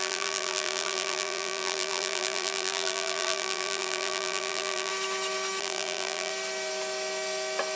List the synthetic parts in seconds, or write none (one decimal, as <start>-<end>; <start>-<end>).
0.0-4.9; 5.6-6.3